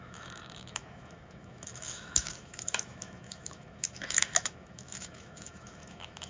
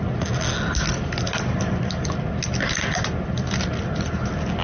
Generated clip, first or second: first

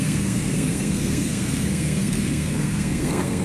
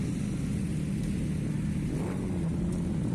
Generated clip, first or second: first